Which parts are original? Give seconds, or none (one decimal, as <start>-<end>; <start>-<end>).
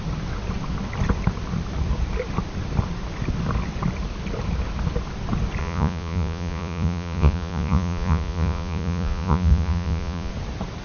0.0-5.6; 10.3-10.8